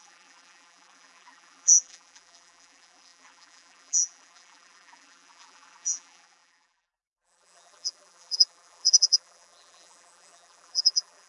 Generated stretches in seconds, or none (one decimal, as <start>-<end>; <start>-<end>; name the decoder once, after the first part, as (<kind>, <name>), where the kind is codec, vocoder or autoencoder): 0.0-11.3 (vocoder, BigVGAN v2)